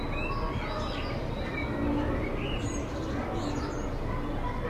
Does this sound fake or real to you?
real